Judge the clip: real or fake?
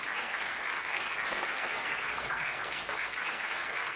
fake